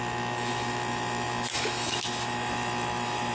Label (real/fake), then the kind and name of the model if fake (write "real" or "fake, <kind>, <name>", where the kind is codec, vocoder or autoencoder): fake, autoencoder, DAC-VAE